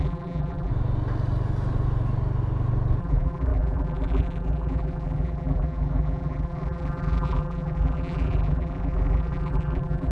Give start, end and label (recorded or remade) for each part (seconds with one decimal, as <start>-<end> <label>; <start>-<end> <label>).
0.0-0.7 remade; 0.7-3.0 recorded; 3.0-10.1 remade